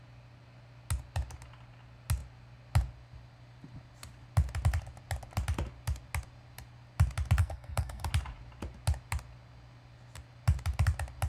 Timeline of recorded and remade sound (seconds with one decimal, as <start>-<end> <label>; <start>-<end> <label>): 0.0-7.4 recorded; 7.4-8.1 remade; 8.1-11.3 recorded